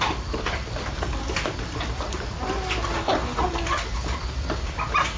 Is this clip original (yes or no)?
yes